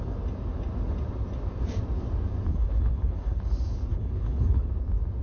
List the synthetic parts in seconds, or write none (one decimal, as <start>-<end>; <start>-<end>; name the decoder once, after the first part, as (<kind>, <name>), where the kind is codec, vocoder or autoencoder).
2.5-3.4 (codec, HILCodec); 3.9-4.7